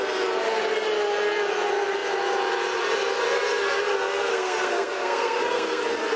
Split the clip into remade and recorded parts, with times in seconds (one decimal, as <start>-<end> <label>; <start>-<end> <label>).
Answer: 0.0-4.3 recorded; 4.3-5.8 remade; 5.8-6.2 recorded